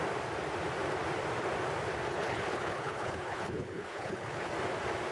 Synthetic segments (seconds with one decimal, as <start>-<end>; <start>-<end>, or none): 2.1-4.5